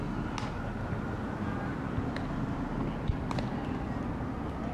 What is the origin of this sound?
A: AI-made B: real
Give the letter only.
B